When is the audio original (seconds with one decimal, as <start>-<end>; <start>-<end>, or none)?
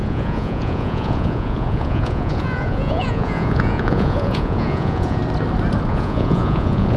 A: 5.2-5.9